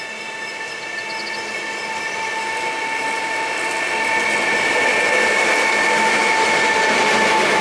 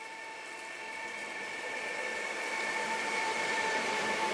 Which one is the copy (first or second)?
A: second